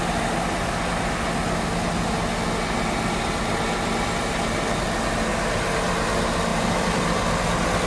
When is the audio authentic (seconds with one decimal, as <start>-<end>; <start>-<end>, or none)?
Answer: 0.0-6.5; 7.4-7.9

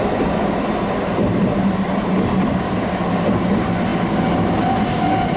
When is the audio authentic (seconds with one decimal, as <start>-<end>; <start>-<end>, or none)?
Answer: none

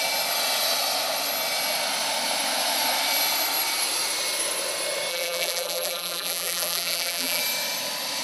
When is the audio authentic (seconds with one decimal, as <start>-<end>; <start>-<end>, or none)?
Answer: 0.0-5.1; 7.4-8.2